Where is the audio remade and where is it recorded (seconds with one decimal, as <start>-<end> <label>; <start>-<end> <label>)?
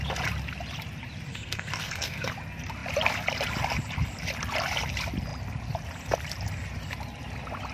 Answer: 0.0-1.3 recorded; 1.3-2.3 remade; 2.3-7.7 recorded